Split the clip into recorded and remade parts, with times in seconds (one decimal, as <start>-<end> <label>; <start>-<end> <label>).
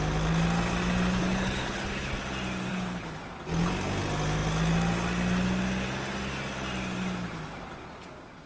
0.0-1.2 recorded; 1.2-2.1 remade; 2.1-2.7 recorded; 2.7-3.2 remade; 3.2-8.5 recorded